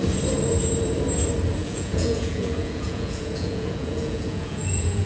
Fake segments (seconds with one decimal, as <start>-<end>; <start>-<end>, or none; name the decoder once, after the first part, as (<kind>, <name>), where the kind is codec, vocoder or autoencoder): 1.6-5.1 (vocoder, Vocos)